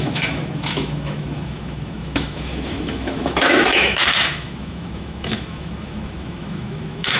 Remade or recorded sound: remade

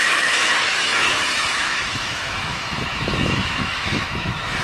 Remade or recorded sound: remade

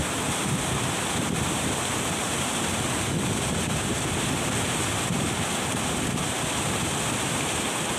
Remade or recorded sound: recorded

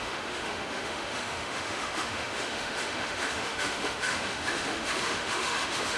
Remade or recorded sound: remade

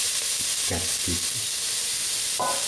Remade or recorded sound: recorded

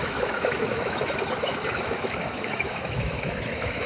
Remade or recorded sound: remade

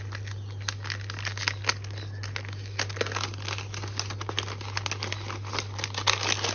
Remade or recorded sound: recorded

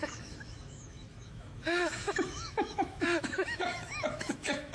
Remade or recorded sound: remade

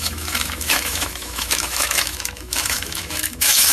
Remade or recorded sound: remade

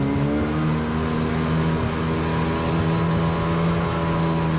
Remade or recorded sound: recorded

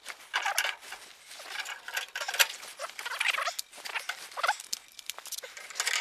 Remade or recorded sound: recorded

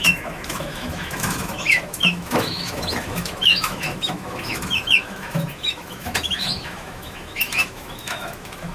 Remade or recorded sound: remade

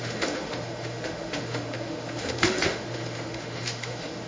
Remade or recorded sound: remade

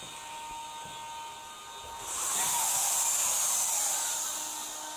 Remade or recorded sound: recorded